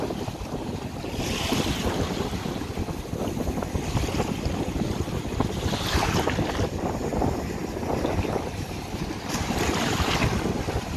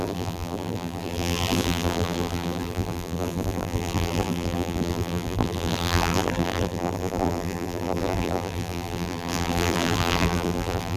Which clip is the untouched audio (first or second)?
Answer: first